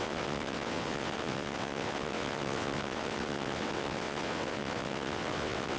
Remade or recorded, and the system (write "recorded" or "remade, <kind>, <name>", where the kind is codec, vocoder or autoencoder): remade, vocoder, WaveNeXt